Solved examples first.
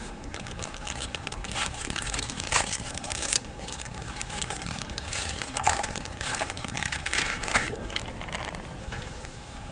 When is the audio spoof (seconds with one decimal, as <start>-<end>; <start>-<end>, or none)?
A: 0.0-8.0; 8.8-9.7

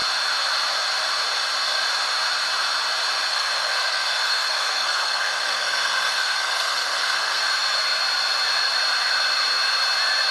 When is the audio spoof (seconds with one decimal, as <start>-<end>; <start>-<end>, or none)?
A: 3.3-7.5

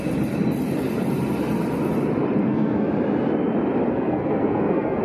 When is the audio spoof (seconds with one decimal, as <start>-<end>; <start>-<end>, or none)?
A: 2.4-2.9; 3.9-5.0

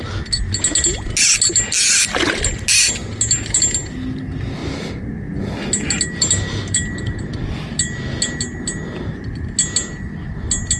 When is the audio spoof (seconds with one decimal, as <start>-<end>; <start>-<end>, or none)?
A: none

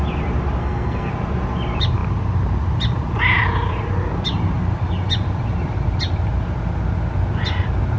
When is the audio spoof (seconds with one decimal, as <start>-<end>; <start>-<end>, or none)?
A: 0.6-1.1